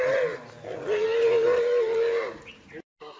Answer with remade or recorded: recorded